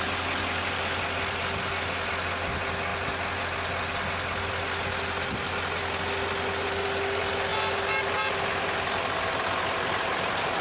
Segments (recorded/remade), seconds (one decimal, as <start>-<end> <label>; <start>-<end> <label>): 0.0-10.6 recorded